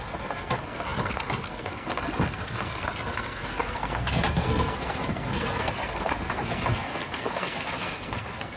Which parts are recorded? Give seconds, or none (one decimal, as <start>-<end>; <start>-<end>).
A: none